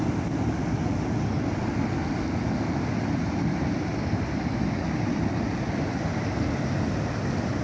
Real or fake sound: real